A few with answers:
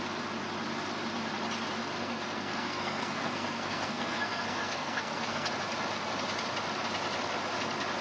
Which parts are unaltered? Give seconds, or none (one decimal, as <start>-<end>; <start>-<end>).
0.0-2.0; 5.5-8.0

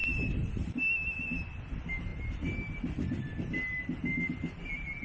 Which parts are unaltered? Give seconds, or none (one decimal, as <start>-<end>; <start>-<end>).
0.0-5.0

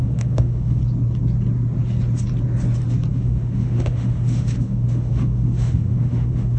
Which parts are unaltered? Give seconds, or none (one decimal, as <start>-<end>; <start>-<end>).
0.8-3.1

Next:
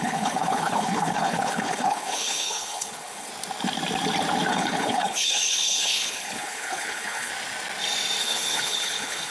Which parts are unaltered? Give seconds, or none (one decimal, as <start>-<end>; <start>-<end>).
3.3-4.5; 7.3-8.2

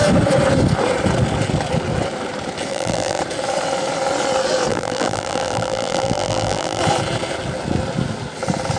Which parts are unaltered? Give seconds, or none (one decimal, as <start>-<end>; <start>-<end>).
0.0-2.7; 3.2-4.7; 6.8-8.8

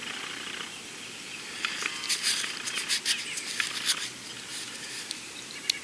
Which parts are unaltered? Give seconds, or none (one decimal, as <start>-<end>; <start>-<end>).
0.0-4.5